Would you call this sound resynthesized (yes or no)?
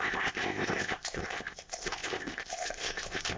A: yes